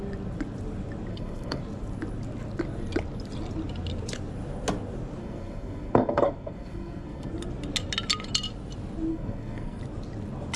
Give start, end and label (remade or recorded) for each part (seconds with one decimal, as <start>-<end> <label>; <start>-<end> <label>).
0.0-1.1 recorded; 1.1-1.6 remade; 1.6-5.2 recorded; 5.2-7.3 remade; 7.3-9.1 recorded; 9.1-9.8 remade; 9.8-10.6 recorded